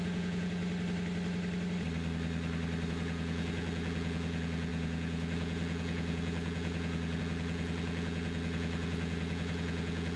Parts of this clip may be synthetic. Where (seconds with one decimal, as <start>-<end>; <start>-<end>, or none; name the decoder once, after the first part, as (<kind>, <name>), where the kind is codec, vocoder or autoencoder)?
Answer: 0.0-0.6 (vocoder, Vocos); 2.9-10.2